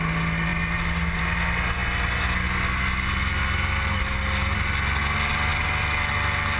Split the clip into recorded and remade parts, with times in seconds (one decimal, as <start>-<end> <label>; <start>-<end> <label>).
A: 0.0-6.6 recorded